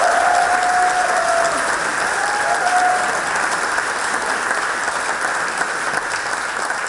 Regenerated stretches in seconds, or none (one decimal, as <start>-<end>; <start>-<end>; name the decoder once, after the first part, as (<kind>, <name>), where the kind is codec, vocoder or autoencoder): none